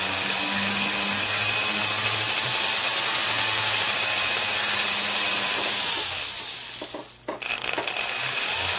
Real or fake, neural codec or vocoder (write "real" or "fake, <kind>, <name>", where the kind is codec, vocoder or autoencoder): real